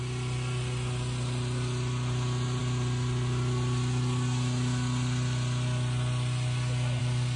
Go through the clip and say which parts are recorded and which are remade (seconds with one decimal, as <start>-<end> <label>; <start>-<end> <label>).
0.0-7.4 recorded